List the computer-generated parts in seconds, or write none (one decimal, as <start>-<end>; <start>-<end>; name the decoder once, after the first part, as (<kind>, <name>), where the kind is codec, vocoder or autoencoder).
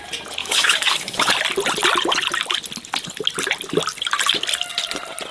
0.4-1.3 (autoencoder, DAC-VAE)